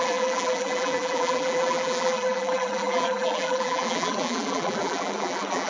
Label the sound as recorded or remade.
remade